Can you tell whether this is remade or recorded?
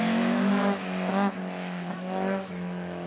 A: remade